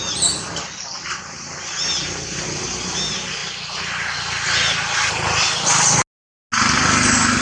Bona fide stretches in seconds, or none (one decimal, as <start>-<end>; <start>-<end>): 0.0-7.4